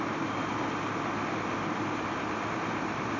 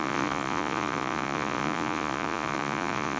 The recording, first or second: first